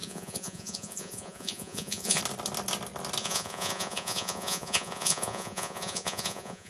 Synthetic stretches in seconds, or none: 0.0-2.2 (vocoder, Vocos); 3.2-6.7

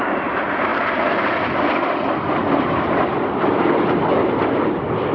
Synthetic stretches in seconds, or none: none

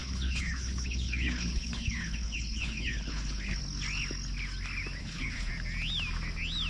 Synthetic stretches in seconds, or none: 0.0-3.6 (codec, HILCodec); 5.0-5.5

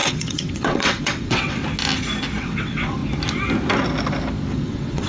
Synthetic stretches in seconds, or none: 0.0-1.6 (vocoder, WaveNeXt); 2.4-3.0; 4.5-5.1

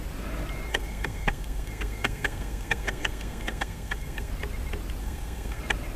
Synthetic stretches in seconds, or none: 0.7-4.3 (codec, SNAC); 5.0-5.6

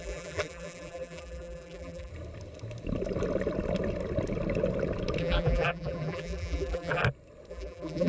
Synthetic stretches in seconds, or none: 0.0-2.1 (vocoder, BigVGAN v2); 5.2-7.0; 7.5-8.1

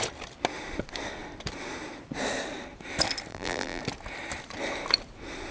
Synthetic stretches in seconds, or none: 3.3-3.8 (vocoder, BigVGAN v2)

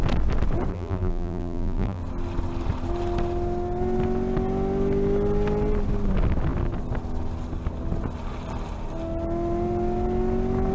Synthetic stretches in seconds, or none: 0.7-2.0 (vocoder, BigVGAN v2)